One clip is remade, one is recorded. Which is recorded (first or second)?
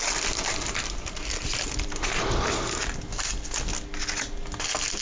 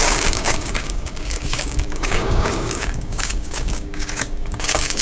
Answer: first